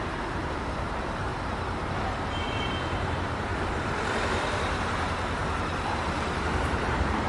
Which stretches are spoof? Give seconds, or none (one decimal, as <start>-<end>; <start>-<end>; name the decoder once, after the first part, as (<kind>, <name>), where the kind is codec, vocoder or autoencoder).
0.0-1.3 (vocoder, BigVGAN v2); 2.5-3.5; 4.2-7.3